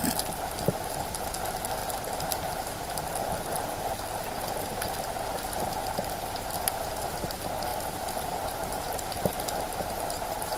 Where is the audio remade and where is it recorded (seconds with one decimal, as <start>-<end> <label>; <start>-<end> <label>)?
0.0-1.8 recorded; 1.8-2.8 remade; 2.8-7.7 recorded; 7.7-8.7 remade; 8.7-10.6 recorded

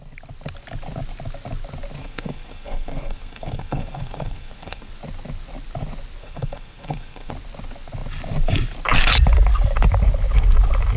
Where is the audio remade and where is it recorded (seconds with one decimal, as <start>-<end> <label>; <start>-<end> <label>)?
0.0-2.0 recorded; 2.0-4.9 remade; 4.9-6.2 recorded; 6.2-7.3 remade; 7.3-11.0 recorded

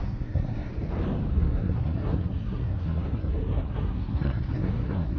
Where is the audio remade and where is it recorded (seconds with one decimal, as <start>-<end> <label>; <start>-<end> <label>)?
0.0-0.7 remade; 0.7-1.3 recorded; 1.3-5.2 remade

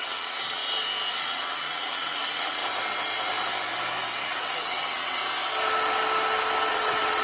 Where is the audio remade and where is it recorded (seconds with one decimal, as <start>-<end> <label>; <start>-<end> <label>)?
0.0-0.6 remade; 0.6-1.1 recorded; 1.1-2.6 remade; 2.6-4.1 recorded; 4.1-5.2 remade; 5.2-6.7 recorded; 6.7-7.2 remade

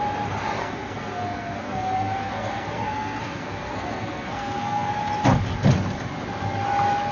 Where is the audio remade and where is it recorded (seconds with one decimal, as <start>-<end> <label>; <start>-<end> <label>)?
0.0-0.6 recorded; 0.6-4.9 remade; 4.9-7.1 recorded

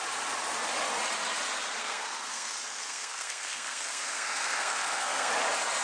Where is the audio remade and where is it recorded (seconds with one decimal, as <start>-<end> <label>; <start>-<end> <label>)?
0.0-1.8 recorded; 1.8-5.3 remade; 5.3-5.8 recorded